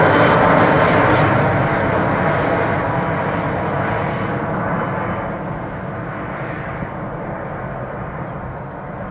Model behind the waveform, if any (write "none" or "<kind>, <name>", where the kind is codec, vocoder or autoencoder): none